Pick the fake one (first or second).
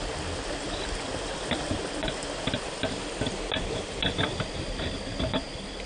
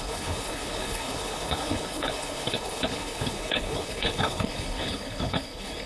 second